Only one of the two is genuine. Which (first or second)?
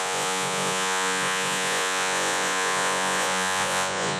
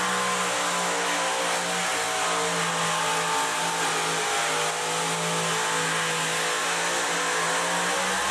second